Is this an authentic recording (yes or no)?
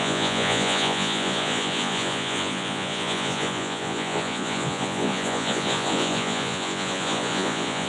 no